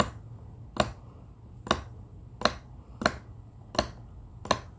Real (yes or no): yes